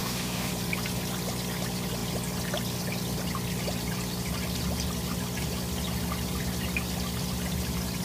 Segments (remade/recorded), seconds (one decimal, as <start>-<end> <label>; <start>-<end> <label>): 0.0-0.5 remade; 0.5-8.0 recorded